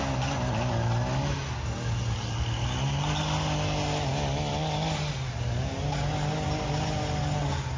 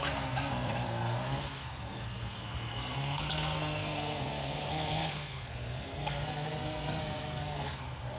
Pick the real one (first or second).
first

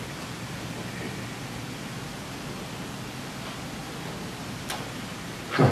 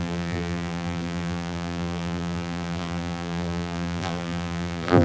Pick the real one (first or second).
first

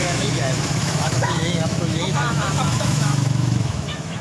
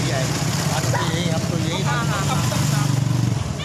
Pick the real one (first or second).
second